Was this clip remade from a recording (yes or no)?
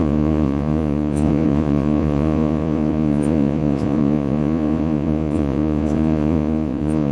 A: yes